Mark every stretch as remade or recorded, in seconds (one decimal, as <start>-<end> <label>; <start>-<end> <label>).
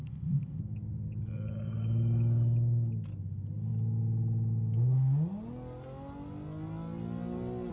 0.0-0.6 remade; 0.6-7.7 recorded